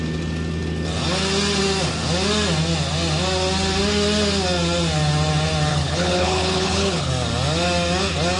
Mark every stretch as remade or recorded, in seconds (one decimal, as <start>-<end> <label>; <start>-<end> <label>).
0.0-5.7 recorded; 5.7-7.1 remade; 7.1-8.4 recorded